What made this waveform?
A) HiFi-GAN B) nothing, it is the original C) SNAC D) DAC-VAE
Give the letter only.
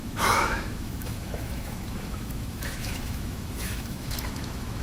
D